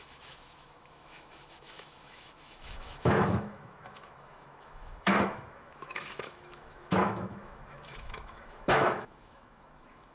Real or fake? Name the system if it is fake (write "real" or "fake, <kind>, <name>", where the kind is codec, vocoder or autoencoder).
fake, autoencoder, DAC-VAE